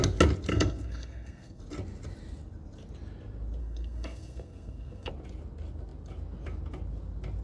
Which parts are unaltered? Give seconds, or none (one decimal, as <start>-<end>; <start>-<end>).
0.0-0.5; 1.6-3.6; 5.1-7.4